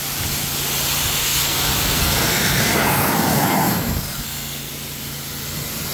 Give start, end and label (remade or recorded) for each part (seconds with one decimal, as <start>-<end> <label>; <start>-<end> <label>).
0.0-1.2 recorded; 1.2-4.7 remade; 4.7-5.9 recorded